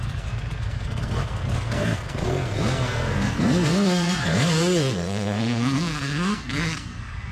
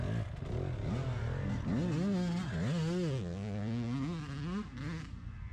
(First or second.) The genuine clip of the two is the second